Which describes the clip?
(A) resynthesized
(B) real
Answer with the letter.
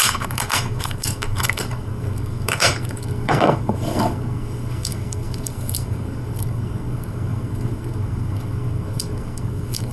A